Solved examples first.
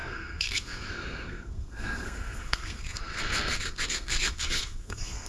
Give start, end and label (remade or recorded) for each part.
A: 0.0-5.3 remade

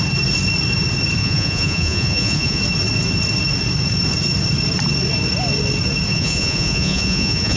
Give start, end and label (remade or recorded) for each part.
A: 0.0-1.2 recorded; 1.2-2.6 remade; 2.6-6.1 recorded; 6.1-7.6 remade

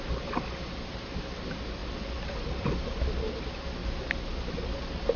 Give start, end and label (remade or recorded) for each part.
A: 0.0-5.2 recorded

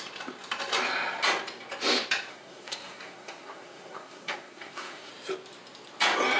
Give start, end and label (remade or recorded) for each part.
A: 0.0-2.3 recorded; 2.3-5.1 remade; 5.1-6.4 recorded